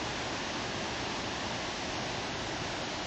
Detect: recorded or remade recorded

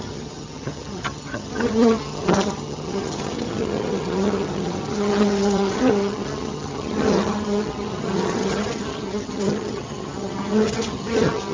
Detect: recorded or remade remade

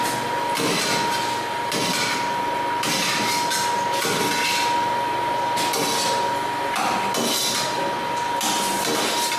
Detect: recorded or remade recorded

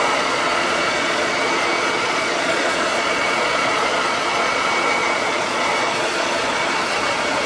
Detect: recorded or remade remade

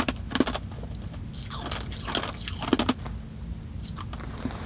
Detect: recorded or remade recorded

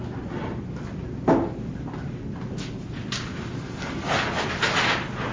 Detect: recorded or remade recorded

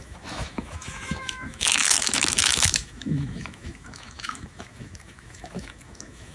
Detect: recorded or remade remade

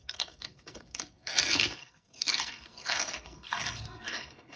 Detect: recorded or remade remade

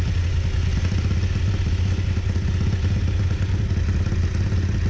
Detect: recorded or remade recorded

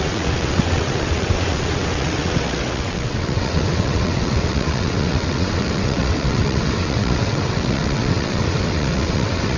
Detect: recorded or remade remade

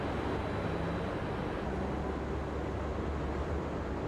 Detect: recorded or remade recorded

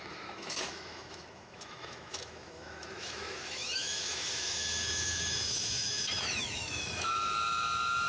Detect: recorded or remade remade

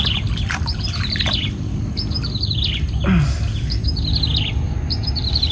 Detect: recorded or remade recorded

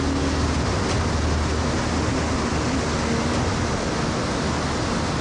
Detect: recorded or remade recorded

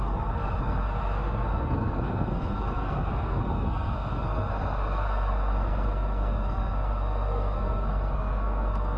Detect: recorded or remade remade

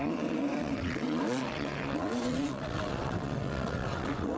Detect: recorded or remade remade